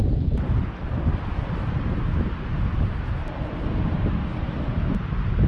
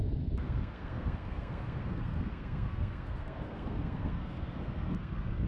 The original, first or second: first